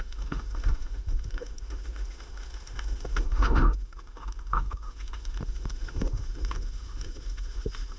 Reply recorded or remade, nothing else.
remade